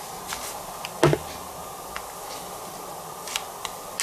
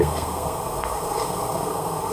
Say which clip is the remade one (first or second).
second